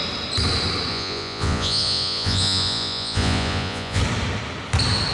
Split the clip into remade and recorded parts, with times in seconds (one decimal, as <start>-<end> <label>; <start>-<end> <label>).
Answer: 0.0-0.9 recorded; 0.9-4.0 remade; 4.0-5.1 recorded